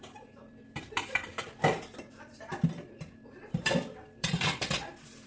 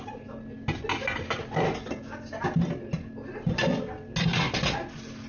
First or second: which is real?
second